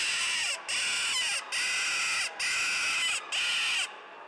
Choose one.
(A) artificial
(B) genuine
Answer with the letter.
B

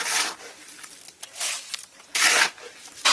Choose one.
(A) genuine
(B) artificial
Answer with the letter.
A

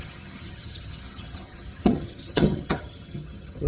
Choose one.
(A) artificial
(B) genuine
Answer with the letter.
A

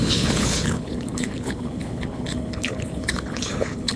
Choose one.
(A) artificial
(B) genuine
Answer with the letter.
A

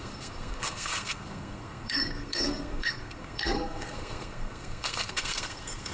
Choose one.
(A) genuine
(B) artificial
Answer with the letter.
B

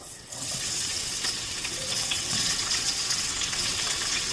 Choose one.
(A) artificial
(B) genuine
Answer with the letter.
A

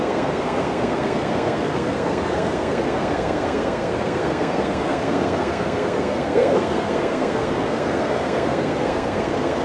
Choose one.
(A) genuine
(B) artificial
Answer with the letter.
B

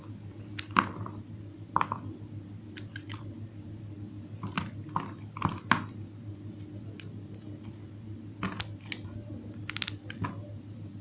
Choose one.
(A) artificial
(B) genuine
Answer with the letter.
B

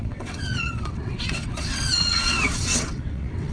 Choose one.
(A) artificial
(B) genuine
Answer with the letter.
A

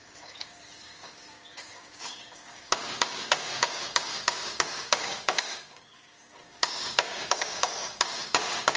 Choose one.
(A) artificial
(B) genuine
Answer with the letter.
A